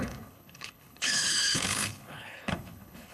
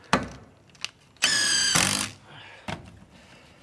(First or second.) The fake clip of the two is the first